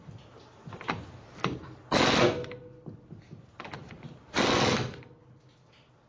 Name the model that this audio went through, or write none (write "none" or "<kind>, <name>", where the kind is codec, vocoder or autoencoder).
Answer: none